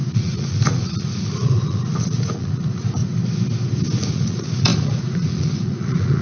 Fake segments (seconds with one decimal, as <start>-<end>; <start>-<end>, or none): 0.0-3.0; 4.1-6.2